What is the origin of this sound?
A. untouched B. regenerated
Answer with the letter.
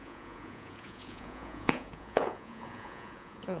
B